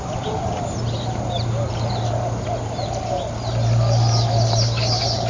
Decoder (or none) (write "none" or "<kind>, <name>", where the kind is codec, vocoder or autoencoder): none